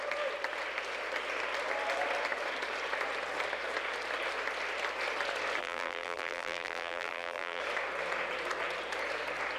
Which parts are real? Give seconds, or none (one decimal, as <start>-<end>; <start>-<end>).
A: 0.0-5.6; 7.6-9.6